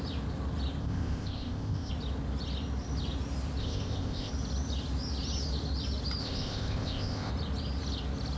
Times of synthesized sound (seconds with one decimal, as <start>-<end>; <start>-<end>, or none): 0.8-1.9; 3.6-4.3; 6.2-7.3